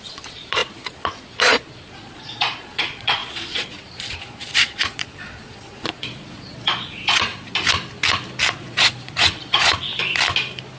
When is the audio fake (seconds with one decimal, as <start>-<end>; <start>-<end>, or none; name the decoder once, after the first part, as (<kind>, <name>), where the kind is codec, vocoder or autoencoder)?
0.0-7.3 (vocoder, Vocos); 8.5-9.9